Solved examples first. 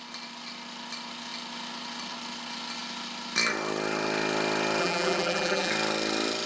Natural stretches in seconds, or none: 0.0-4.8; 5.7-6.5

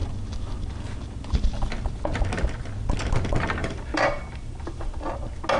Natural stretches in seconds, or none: 0.0-3.6; 5.1-5.6